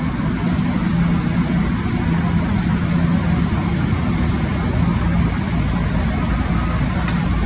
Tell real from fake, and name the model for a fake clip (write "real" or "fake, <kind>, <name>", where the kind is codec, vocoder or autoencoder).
real